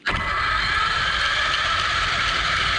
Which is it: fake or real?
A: real